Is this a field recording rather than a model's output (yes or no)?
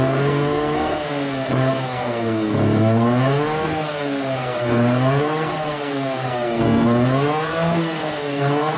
no